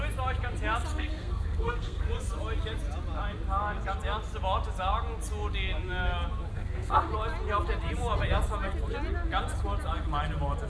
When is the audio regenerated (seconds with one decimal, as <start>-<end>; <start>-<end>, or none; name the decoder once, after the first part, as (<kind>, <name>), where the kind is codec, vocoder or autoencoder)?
0.9-2.1 (codec, SNAC); 6.5-7.1